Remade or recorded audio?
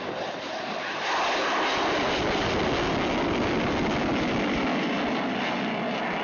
recorded